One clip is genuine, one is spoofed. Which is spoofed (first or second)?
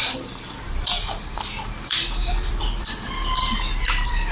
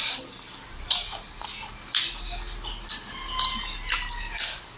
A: first